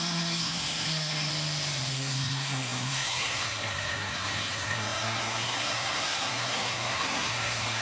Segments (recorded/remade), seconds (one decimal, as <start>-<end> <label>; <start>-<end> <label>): 0.0-1.3 remade; 1.3-1.9 recorded; 1.9-7.8 remade